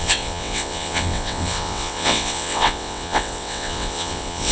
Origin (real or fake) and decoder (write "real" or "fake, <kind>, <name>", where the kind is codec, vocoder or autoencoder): fake, vocoder, WaveNeXt